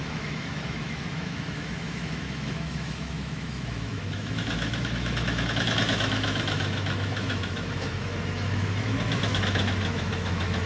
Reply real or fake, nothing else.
fake